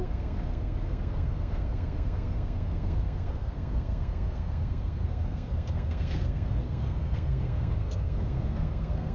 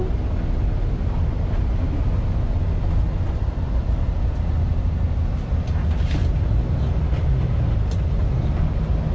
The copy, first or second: first